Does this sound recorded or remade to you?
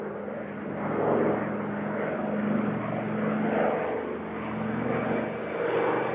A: recorded